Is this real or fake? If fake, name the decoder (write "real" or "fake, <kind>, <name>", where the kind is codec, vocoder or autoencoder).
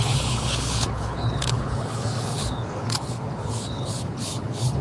fake, codec, HILCodec